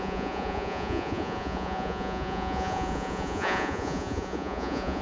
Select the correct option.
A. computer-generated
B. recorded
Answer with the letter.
A